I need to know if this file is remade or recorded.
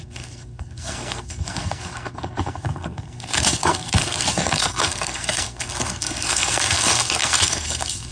remade